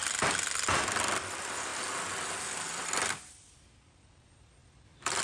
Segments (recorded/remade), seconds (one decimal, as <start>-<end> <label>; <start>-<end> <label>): 0.0-5.2 recorded